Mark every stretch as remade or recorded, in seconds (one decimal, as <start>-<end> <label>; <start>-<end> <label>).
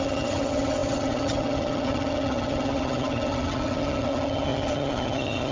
0.0-5.5 remade